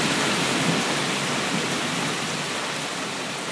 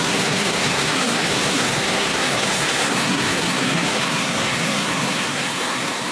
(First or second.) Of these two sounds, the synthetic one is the second